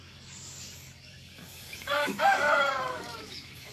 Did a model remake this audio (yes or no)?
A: yes